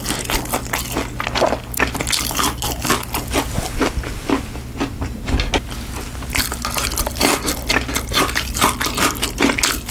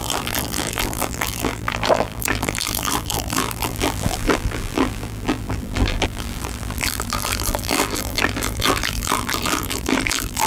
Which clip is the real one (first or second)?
first